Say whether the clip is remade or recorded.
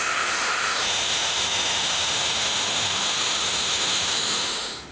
remade